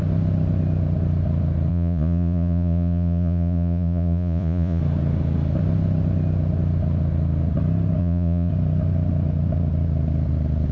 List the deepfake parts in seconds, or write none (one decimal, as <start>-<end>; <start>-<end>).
1.7-4.8; 8.0-8.5